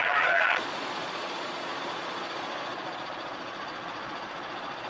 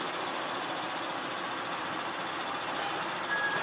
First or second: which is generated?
first